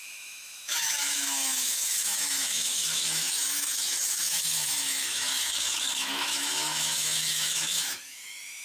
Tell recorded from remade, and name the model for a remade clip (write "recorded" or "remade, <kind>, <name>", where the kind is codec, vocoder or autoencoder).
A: remade, autoencoder, DAC-VAE